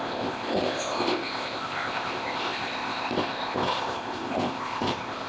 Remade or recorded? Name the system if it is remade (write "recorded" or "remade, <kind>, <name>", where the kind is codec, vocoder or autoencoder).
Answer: remade, codec, ZipCodec